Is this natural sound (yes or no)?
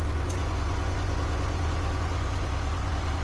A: no